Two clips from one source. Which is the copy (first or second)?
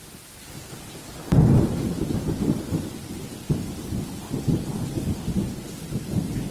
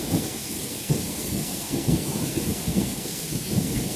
second